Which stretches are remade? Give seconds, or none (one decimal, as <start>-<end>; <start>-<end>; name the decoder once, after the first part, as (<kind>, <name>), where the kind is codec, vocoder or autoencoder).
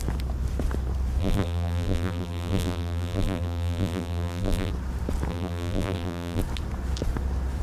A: 1.2-4.7 (vocoder, BigVGAN v2); 5.3-6.4